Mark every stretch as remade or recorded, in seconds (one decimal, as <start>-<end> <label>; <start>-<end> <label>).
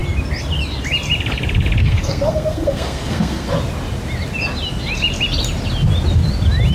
0.0-1.8 recorded; 1.8-3.5 remade; 3.5-6.7 recorded